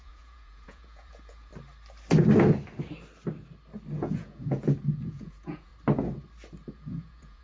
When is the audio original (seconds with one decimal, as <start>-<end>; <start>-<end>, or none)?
1.5-3.9; 5.7-6.7